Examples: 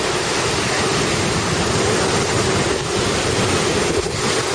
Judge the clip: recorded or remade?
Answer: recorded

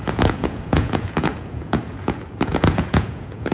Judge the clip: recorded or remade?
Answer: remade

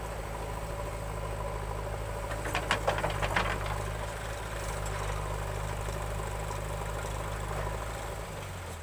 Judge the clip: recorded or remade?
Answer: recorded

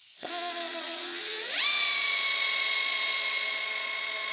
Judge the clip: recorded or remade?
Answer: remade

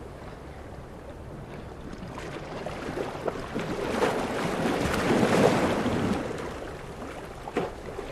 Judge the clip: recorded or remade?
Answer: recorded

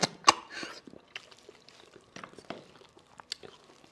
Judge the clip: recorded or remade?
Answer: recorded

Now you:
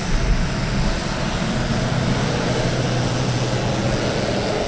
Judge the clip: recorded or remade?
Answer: recorded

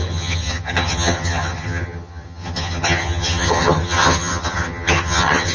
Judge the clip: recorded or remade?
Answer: remade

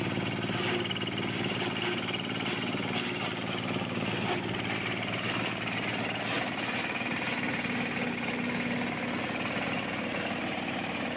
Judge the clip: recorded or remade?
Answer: recorded